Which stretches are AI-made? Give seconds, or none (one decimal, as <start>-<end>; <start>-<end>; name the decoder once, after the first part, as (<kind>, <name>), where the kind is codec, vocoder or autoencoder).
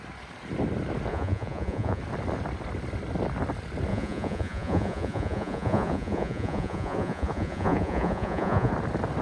1.1-2.0 (vocoder, Vocos); 3.9-8.7